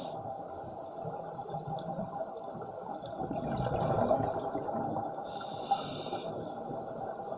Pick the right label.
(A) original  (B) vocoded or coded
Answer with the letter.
A